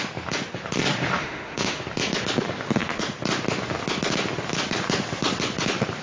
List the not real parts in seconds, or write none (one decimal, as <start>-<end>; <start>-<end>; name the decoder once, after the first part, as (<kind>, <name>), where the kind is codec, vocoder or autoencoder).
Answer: 1.2-1.8 (autoencoder, DAC-VAE)